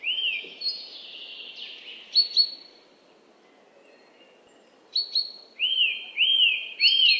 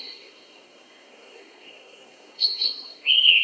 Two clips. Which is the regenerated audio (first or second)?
second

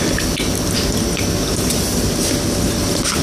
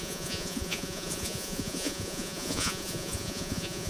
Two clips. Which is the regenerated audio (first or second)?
second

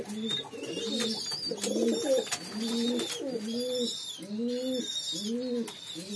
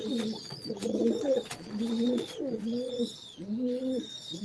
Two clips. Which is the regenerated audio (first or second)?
second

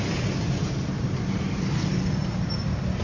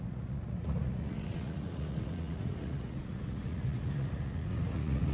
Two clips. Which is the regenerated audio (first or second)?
second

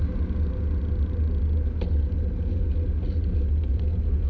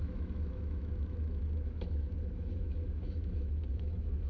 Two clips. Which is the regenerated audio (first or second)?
second